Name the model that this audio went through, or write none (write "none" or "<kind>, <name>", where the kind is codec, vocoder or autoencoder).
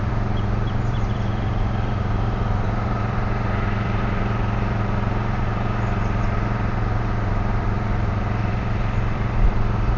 vocoder, BigVGAN v2